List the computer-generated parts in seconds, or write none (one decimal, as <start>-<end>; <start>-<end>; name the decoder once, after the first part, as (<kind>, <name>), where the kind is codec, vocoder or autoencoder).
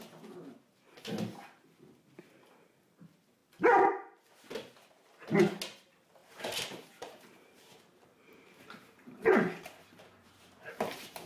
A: 6.2-11.3 (vocoder, BigVGAN v2)